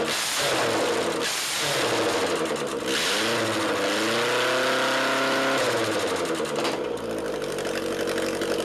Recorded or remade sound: recorded